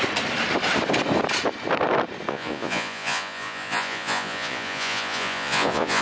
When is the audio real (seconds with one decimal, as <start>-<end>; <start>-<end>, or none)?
0.0-2.3